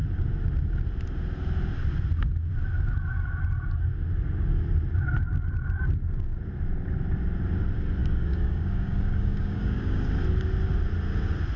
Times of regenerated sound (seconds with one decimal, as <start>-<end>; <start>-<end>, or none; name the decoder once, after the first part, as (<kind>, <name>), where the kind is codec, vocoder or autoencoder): 8.0-10.1 (codec, DAC)